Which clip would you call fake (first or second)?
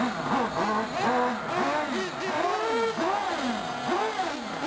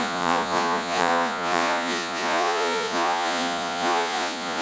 second